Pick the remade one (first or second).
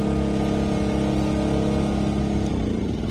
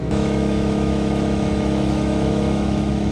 second